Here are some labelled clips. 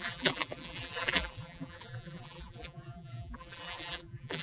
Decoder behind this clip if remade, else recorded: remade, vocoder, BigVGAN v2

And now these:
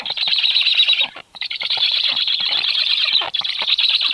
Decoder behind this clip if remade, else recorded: remade, vocoder, BigVGAN v2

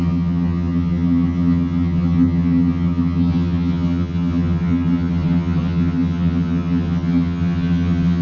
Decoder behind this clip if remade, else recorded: remade, vocoder, HiFi-GAN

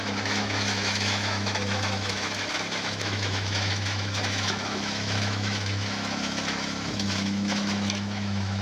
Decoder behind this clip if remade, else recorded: remade, autoencoder, DAC-VAE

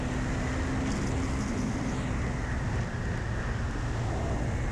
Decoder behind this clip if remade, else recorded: recorded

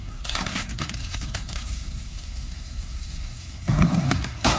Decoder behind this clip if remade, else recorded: remade, codec, SNAC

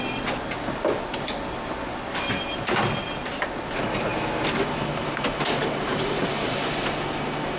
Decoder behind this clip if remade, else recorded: recorded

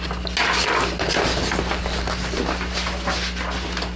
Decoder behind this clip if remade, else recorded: recorded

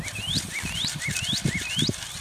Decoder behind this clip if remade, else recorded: recorded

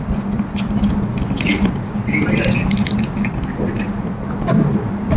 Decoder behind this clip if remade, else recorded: recorded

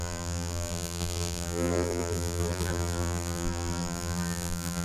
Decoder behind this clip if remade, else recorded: remade, vocoder, BigVGAN v2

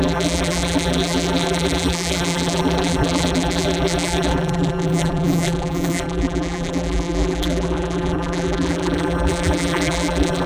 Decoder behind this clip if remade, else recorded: remade, vocoder, BigVGAN v2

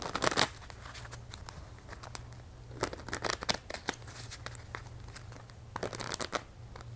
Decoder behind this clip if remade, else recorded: recorded